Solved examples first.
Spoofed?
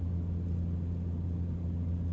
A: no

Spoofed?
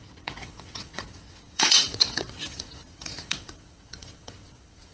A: yes